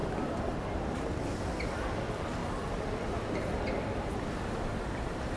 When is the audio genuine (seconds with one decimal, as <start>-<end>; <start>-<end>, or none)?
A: 0.0-1.7; 2.4-4.3